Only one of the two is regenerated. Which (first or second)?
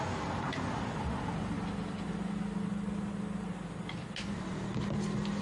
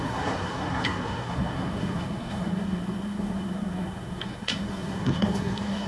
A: second